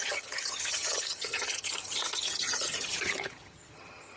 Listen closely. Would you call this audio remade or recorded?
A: remade